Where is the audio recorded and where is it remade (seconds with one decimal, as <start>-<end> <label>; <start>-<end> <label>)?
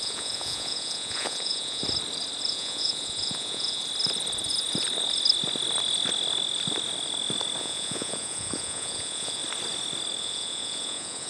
0.0-1.8 remade; 1.8-2.5 recorded; 2.5-3.8 remade; 3.8-7.6 recorded; 7.6-9.4 remade; 9.4-10.2 recorded; 10.2-11.3 remade